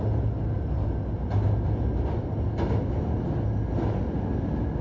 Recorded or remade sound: recorded